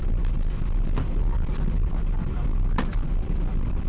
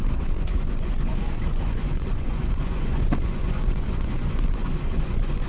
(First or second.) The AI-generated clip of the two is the second